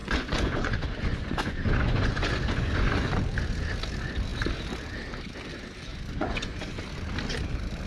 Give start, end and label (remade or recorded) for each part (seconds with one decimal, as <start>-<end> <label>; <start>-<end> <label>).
0.0-3.1 remade; 3.1-5.9 recorded; 5.9-6.8 remade; 6.8-7.9 recorded